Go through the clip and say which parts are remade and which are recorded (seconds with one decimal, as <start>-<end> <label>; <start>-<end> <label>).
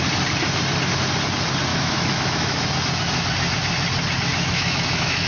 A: 0.0-1.7 recorded; 1.7-2.6 remade; 2.6-4.3 recorded; 4.3-5.3 remade